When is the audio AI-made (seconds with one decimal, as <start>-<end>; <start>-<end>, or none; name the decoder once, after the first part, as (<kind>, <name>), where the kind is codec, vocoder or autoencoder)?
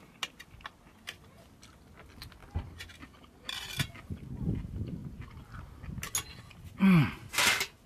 none